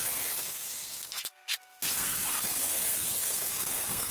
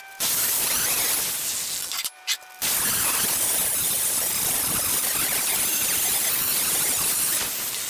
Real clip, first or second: second